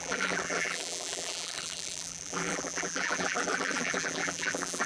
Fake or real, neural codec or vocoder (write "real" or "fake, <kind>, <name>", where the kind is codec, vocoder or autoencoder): fake, vocoder, BigVGAN v2